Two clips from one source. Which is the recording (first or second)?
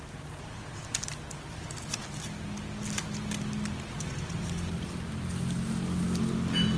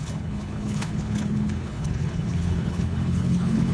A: first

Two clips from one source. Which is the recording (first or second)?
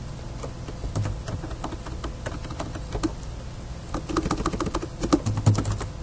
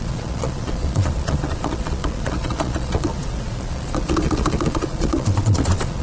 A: first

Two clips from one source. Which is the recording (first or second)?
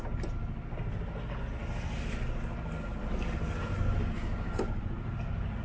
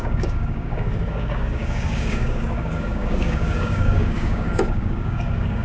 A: first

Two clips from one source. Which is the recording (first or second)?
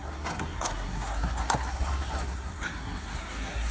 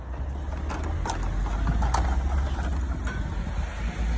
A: second